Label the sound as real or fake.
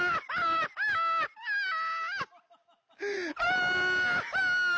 real